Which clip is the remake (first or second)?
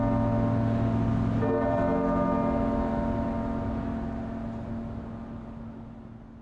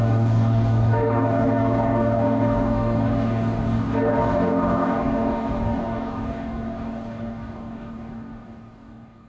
second